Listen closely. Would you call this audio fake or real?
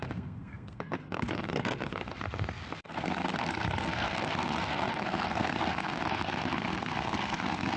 fake